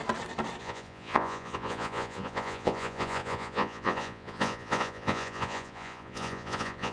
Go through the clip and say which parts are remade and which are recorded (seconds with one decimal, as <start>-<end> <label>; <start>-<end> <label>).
0.0-0.6 recorded; 0.6-6.9 remade